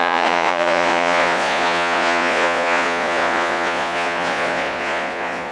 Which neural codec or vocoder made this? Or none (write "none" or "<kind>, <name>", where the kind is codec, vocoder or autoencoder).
vocoder, Vocos